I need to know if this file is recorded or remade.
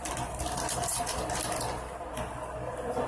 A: recorded